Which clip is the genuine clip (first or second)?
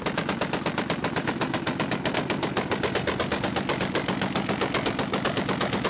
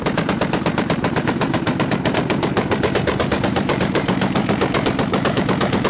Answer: first